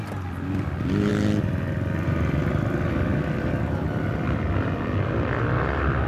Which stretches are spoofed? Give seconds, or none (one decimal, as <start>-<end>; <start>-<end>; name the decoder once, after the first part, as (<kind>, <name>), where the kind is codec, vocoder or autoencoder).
none